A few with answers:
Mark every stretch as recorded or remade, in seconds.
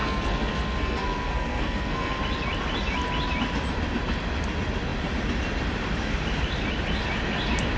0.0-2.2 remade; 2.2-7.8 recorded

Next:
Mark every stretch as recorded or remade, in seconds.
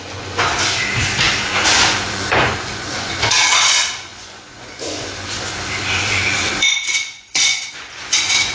0.0-0.5 remade; 0.5-1.0 recorded; 1.0-8.5 remade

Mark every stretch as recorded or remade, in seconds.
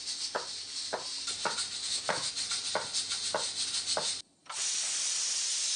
0.0-1.8 recorded; 1.8-2.3 remade; 2.3-5.8 recorded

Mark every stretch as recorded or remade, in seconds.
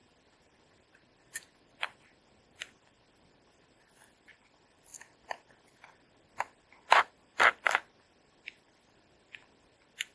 0.0-4.9 remade; 4.9-6.3 recorded; 6.3-10.1 remade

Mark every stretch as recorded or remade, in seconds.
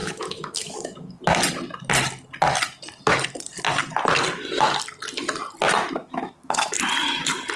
0.0-1.2 remade; 1.2-6.0 recorded; 6.0-6.7 remade; 6.7-7.6 recorded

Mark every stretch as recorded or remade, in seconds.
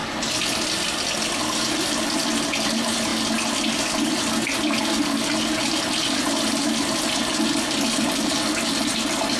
0.0-9.4 recorded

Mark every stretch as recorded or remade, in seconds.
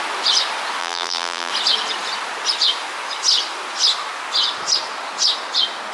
0.0-0.8 recorded; 0.8-1.5 remade; 1.5-5.9 recorded